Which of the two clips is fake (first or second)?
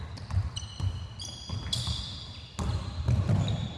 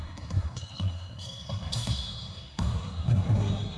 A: second